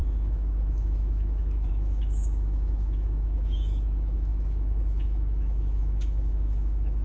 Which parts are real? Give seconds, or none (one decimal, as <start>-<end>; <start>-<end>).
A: none